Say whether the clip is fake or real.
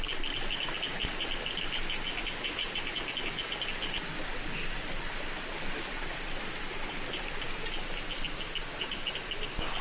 real